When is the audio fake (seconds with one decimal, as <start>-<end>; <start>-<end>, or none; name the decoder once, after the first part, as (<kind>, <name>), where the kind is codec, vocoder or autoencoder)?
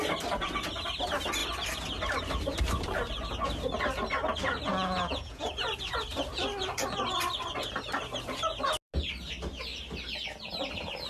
4.7-5.5 (vocoder, Vocos)